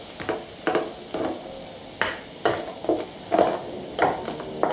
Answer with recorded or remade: recorded